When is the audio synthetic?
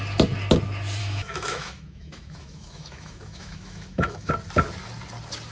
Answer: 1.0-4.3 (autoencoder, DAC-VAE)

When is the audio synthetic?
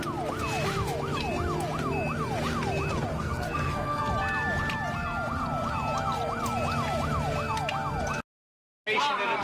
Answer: 3.1-4.0 (codec, SNAC)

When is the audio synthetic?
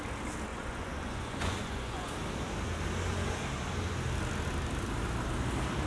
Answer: 0.5-2.1 (vocoder, Vocos)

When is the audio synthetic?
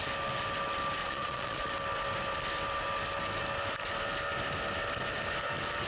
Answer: 1.0-1.7 (vocoder, Vocos)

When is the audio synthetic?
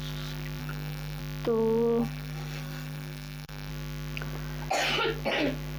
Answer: 0.6-1.2 (codec, SNAC); 2.0-3.7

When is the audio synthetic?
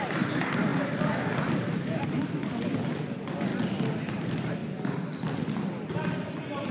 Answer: 0.0-0.7 (vocoder, BigVGAN v2); 1.7-3.5; 4.1-4.6; 5.9-6.7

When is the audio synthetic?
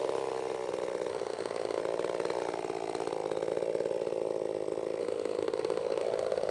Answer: 1.1-1.8 (autoencoder, DAC-VAE); 5.0-6.5